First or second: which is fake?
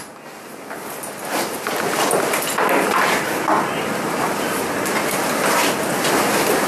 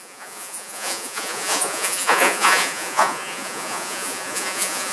second